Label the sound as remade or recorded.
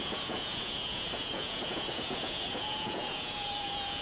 remade